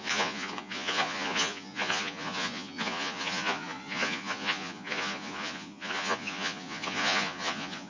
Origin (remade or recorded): remade